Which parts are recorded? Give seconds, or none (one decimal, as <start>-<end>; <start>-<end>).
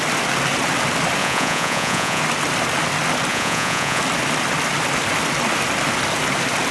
0.0-1.2; 2.2-3.3; 4.0-6.7